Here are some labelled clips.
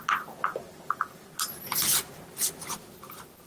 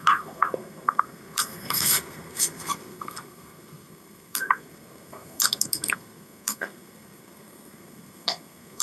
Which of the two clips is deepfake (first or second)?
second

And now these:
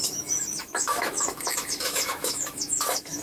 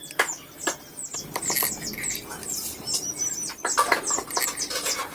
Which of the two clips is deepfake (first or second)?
first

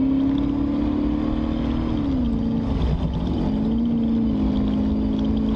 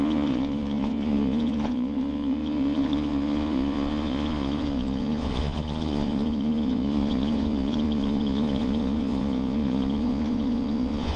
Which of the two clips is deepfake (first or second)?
second